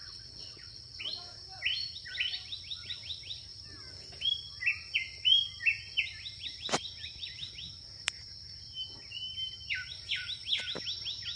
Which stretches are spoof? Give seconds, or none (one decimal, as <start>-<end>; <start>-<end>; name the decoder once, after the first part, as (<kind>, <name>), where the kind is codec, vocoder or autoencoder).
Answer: 0.0-1.0 (vocoder, WaveNeXt)